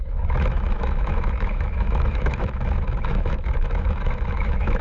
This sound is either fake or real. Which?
fake